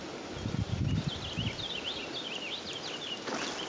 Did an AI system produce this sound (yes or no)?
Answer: no